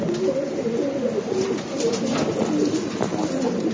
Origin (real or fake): real